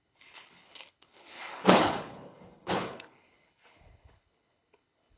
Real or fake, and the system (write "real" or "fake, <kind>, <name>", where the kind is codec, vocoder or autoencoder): fake, codec, HILCodec